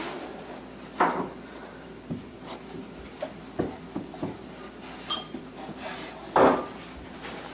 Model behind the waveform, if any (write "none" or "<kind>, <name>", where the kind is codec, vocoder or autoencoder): none